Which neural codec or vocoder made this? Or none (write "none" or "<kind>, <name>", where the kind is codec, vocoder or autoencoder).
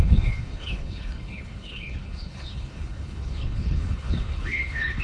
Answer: codec, HILCodec